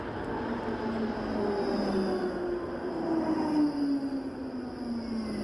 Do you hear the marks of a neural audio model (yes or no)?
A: no